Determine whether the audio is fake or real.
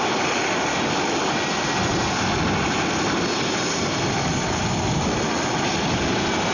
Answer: real